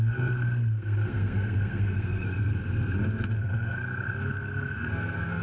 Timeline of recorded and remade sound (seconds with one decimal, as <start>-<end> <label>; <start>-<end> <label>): 0.0-2.5 remade; 2.5-3.3 recorded; 3.3-5.4 remade